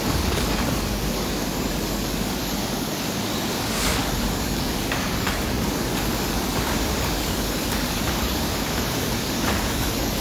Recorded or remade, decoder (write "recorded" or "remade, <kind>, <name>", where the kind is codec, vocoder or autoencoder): remade, codec, DAC